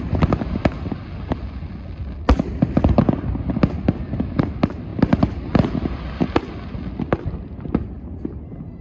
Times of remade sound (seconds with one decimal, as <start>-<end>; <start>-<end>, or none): none